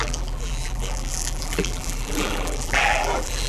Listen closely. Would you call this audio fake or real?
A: fake